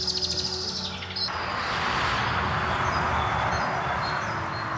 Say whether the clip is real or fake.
real